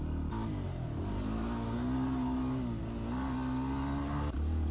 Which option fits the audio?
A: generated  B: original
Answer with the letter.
B